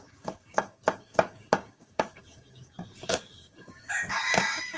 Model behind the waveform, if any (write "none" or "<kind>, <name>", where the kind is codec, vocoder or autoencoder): codec, DAC